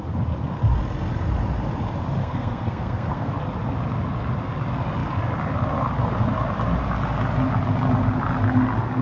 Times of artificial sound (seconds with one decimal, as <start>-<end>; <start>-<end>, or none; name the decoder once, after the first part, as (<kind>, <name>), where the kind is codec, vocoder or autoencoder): 2.2-3.3 (codec, SNAC)

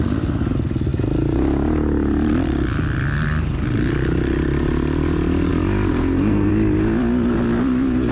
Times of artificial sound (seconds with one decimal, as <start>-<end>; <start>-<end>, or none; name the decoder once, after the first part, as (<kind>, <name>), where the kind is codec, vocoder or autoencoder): 5.9-6.5 (codec, SNAC)

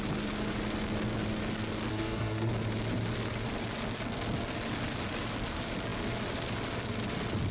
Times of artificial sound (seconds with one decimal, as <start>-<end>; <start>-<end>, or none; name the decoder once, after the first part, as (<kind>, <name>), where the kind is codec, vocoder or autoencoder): 1.9-2.5 (codec, SNAC)

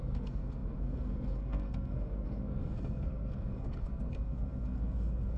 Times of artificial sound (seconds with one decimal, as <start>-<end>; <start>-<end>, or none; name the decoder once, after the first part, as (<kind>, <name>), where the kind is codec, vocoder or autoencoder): 0.0-5.4 (codec, SNAC)

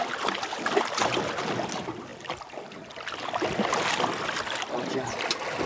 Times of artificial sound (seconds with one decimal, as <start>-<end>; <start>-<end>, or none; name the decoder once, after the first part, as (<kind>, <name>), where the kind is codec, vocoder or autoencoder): none